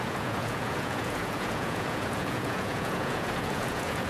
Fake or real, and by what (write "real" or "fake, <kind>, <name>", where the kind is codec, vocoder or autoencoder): fake, vocoder, Vocos